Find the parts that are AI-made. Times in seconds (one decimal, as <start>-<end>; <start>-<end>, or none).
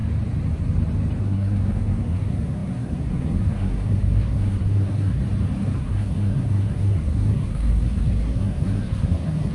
1.2-5.2; 5.8-9.5